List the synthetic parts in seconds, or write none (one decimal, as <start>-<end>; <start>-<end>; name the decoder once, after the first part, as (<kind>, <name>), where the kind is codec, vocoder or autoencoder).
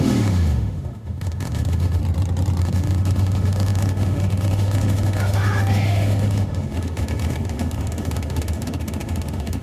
0.0-2.0 (autoencoder, DAC-VAE); 2.6-9.6